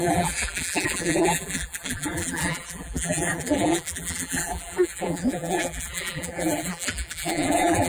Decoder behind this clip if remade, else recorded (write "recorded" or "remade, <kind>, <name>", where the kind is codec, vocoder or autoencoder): remade, vocoder, BigVGAN v2